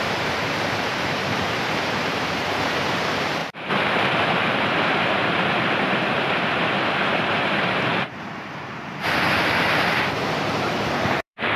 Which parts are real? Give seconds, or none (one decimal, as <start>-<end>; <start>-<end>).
none